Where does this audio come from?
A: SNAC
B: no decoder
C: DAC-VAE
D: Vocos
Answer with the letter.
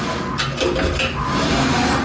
B